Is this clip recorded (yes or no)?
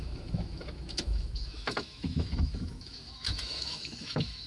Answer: no